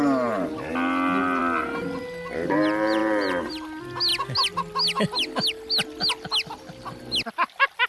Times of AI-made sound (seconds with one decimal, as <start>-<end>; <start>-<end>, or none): none